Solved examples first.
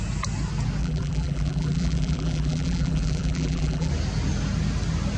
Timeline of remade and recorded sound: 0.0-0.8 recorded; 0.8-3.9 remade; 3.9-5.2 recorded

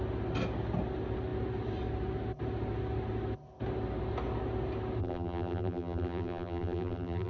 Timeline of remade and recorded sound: 0.0-5.0 recorded; 5.0-7.3 remade

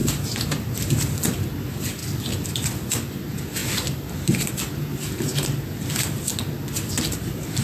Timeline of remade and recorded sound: 0.0-0.9 remade; 0.9-3.6 recorded; 3.6-4.5 remade; 4.5-7.6 recorded

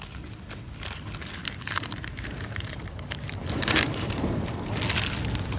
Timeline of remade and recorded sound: 0.0-1.4 recorded; 1.4-4.8 remade; 4.8-5.6 recorded

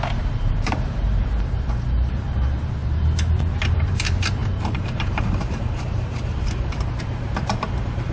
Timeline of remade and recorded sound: 0.0-2.8 remade; 2.8-3.7 recorded; 3.7-8.1 remade

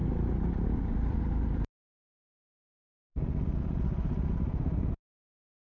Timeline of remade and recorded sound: 0.0-1.6 remade; 1.6-5.7 recorded

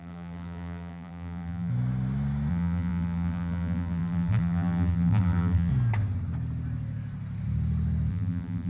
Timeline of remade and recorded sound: 0.0-1.7 remade; 1.7-2.5 recorded; 2.5-5.7 remade; 5.7-8.1 recorded; 8.1-8.7 remade